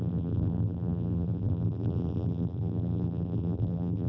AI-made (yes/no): yes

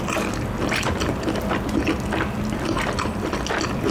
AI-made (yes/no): no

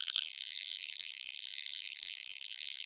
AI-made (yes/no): yes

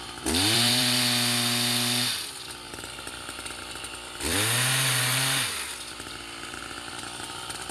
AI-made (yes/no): yes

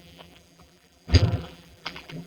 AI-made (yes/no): yes